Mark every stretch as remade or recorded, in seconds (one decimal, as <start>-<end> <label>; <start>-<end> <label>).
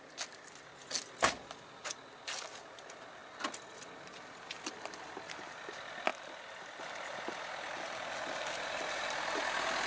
0.0-9.9 recorded